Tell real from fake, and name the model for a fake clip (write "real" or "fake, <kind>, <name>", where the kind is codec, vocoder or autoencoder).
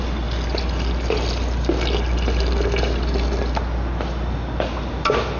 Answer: real